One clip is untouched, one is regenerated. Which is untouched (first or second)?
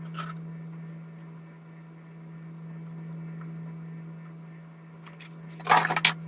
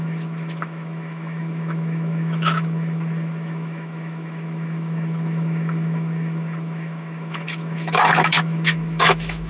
first